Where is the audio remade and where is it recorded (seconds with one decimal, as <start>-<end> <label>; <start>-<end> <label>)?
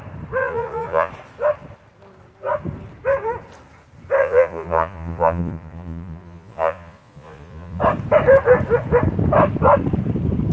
0.0-0.4 recorded; 0.4-1.1 remade; 1.1-4.2 recorded; 4.2-7.8 remade; 7.8-10.5 recorded